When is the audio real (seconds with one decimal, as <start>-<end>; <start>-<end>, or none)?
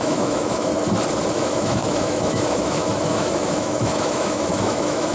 0.7-1.3